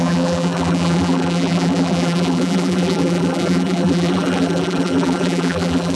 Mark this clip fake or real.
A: fake